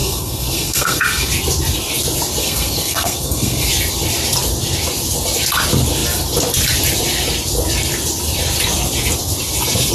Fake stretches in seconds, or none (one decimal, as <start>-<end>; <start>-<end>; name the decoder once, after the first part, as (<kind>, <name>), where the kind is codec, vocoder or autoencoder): 0.0-1.3 (codec, SNAC); 2.4-3.7